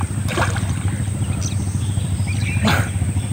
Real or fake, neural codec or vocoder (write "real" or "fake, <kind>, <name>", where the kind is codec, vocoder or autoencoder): real